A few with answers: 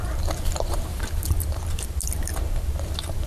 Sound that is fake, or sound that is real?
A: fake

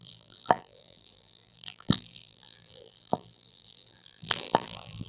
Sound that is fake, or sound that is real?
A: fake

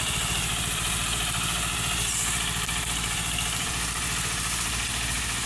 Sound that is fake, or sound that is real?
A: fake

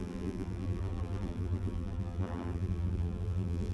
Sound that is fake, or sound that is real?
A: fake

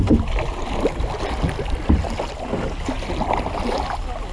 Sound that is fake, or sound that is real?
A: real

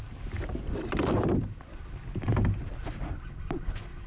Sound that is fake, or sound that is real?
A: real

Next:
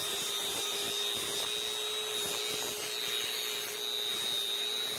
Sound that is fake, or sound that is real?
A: real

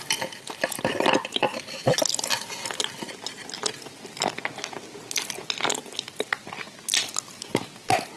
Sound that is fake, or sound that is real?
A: real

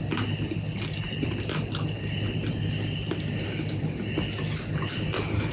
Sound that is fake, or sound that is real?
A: real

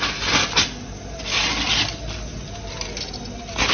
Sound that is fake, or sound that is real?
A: real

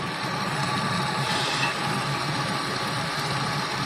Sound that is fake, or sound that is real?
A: fake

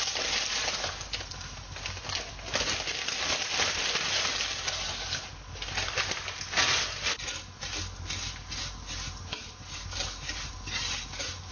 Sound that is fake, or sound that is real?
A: real